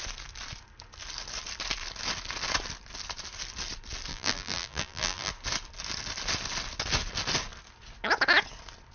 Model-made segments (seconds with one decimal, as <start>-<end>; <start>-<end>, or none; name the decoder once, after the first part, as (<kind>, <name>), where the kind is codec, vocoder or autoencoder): 4.1-5.3 (vocoder, BigVGAN v2)